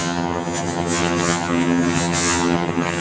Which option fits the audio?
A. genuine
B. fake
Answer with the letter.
B